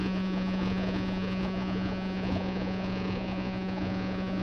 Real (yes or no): no